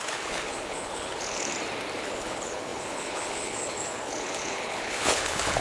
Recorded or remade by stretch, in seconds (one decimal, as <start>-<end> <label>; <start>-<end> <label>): 0.0-1.5 remade; 1.5-2.0 recorded; 2.0-5.6 remade